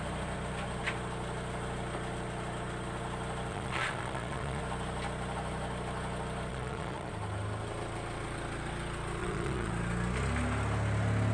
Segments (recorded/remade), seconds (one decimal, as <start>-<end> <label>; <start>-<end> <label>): 0.0-3.5 recorded; 3.5-4.6 remade; 4.6-6.5 recorded; 6.5-7.1 remade; 7.1-9.2 recorded; 9.2-9.7 remade; 9.7-11.3 recorded